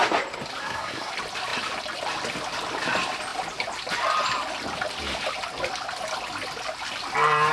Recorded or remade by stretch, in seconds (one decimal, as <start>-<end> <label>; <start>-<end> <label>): 0.0-0.6 recorded; 0.6-1.1 remade; 1.1-7.5 recorded